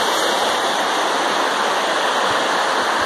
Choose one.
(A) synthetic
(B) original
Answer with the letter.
B